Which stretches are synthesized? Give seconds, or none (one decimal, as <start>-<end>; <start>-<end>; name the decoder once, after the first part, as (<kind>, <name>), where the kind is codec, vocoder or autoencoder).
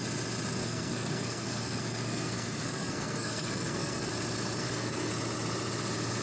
0.6-4.1 (codec, SNAC); 4.6-5.1